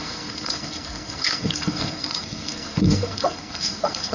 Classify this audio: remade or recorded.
remade